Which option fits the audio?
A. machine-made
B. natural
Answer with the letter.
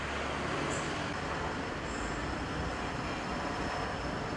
B